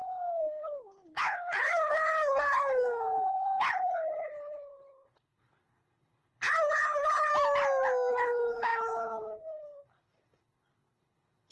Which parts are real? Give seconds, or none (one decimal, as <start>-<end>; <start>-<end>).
7.3-8.1